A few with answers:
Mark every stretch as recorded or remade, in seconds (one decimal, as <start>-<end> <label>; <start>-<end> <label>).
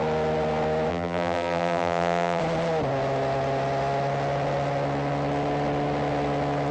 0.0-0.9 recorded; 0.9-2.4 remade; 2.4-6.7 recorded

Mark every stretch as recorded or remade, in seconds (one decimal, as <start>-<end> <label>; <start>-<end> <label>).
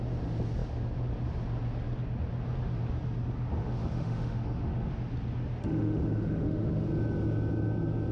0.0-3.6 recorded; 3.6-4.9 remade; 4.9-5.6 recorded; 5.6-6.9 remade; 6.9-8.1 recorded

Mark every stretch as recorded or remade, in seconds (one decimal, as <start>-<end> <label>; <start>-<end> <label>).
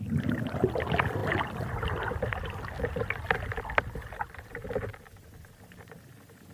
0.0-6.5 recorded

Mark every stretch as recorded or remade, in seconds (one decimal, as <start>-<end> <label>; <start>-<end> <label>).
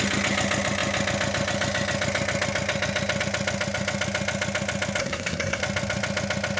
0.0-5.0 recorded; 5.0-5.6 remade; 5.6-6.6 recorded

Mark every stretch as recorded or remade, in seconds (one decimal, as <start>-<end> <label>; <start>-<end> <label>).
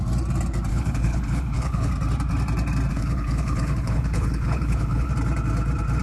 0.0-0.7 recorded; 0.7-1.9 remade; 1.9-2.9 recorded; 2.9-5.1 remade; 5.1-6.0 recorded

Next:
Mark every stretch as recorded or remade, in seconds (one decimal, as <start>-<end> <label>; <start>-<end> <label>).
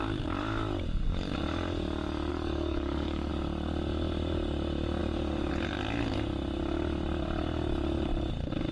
0.0-2.3 recorded; 2.3-3.3 remade; 3.3-8.7 recorded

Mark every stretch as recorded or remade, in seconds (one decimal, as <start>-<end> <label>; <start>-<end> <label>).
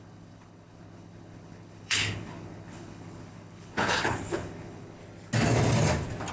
0.0-5.0 remade; 5.0-6.3 recorded